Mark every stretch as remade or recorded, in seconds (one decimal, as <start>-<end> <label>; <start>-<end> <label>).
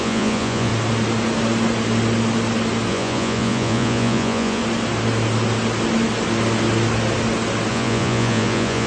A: 0.0-0.7 remade; 0.7-2.9 recorded; 2.9-4.6 remade; 4.6-7.7 recorded; 7.7-8.9 remade